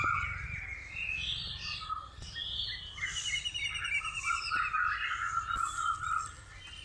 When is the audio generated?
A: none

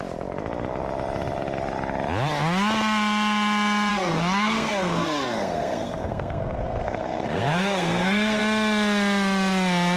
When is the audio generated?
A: 3.9-8.4 (codec, SNAC)

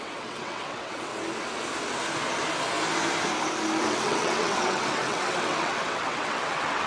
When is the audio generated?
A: 0.0-1.1 (vocoder, WaveNeXt); 3.8-6.9

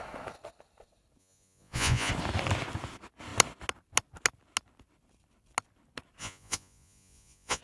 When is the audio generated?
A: 1.2-2.1 (vocoder, Vocos); 6.2-7.6

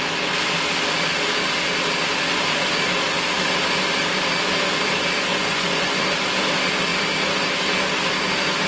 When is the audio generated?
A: 5.3-6.0 (vocoder, Vocos)

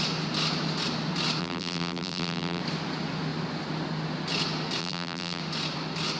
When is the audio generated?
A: 1.4-2.6 (vocoder, BigVGAN v2); 4.8-5.4